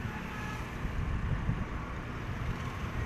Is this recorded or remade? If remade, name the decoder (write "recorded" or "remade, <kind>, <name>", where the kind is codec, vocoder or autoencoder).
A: recorded